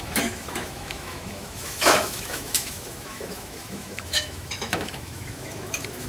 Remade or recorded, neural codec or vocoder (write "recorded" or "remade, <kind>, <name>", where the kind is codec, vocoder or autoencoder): remade, autoencoder, DAC-VAE